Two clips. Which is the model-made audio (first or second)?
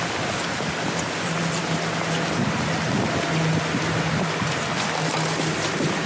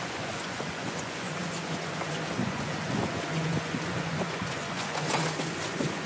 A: second